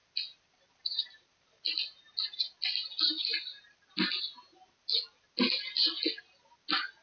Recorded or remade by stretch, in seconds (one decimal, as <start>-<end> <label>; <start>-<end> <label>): 0.0-7.0 recorded